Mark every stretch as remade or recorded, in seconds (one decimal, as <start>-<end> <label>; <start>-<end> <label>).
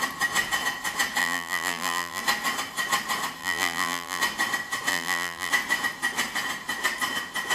0.0-1.2 recorded; 1.2-2.2 remade; 2.2-3.4 recorded; 3.4-4.2 remade; 4.2-4.9 recorded; 4.9-5.5 remade; 5.5-7.5 recorded